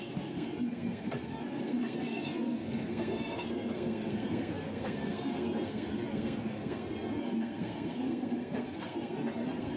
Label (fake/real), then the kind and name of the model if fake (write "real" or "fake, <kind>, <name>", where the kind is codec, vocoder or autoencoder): fake, codec, SNAC